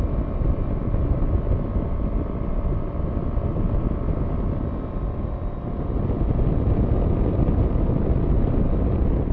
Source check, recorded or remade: recorded